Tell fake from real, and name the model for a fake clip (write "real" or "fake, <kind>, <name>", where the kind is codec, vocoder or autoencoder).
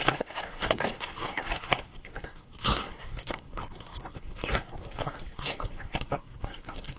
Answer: fake, codec, SNAC